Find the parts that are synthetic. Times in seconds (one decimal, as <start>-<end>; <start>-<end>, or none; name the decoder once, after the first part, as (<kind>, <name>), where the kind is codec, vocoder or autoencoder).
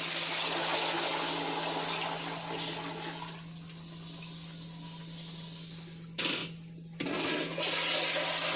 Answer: none